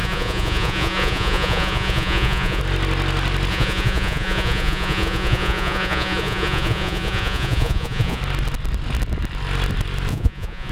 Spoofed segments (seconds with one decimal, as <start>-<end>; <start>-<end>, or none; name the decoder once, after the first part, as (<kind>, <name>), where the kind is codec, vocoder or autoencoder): 0.0-2.6 (vocoder, Vocos); 3.5-8.2; 10.1-10.7